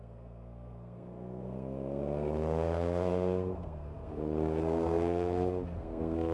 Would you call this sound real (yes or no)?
no